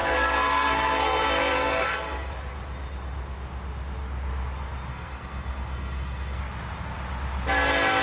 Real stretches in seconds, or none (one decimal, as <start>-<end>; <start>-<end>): 2.3-4.9; 6.4-8.0